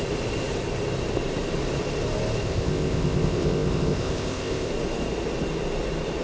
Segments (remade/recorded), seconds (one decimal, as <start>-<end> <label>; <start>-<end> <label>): 0.0-2.4 recorded; 2.4-4.7 remade; 4.7-6.2 recorded